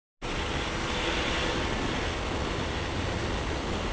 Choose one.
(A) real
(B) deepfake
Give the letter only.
A